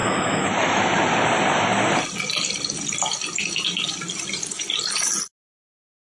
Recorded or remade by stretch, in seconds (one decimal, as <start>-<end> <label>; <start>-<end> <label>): 0.0-0.8 remade; 0.8-6.0 recorded